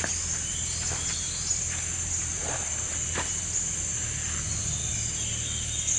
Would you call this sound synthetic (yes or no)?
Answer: no